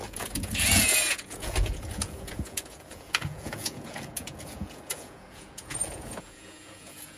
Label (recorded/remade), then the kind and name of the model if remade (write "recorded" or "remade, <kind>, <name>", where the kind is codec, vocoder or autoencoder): remade, vocoder, Vocos